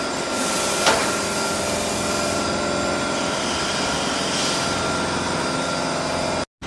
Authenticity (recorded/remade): recorded